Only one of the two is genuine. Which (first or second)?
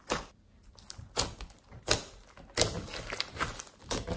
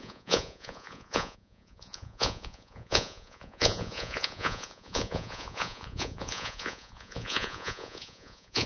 first